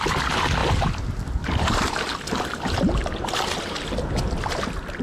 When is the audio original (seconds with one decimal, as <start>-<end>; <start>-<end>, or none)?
0.0-5.0